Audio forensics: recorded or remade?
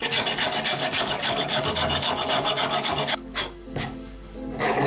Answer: remade